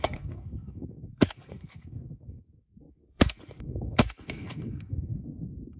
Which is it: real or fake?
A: fake